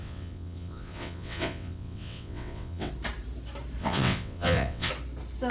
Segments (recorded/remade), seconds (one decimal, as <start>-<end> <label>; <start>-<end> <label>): 0.0-2.9 remade; 2.9-3.8 recorded; 3.8-4.9 remade; 4.9-5.5 recorded